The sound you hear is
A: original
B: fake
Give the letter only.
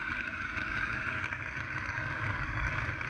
B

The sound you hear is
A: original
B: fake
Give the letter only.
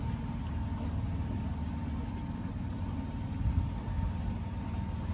A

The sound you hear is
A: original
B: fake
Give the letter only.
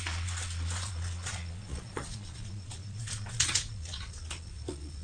B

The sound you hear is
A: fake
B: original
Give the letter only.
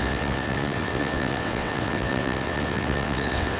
A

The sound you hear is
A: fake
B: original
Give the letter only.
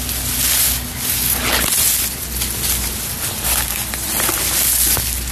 B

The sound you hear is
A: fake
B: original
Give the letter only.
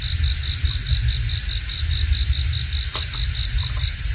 B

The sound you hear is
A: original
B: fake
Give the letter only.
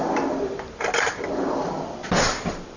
A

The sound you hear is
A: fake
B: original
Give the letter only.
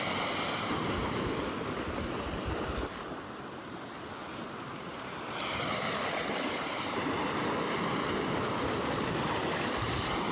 B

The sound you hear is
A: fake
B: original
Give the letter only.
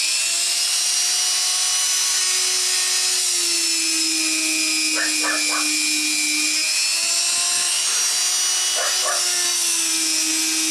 B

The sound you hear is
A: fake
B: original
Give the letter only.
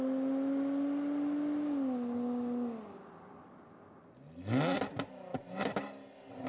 B